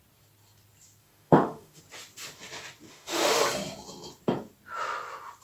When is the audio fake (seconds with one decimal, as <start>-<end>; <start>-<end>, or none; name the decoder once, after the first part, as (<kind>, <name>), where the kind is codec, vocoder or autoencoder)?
1.0-1.8 (autoencoder, DAC-VAE); 2.9-3.4